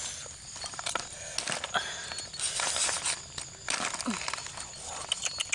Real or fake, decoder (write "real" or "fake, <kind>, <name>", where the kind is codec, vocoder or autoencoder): real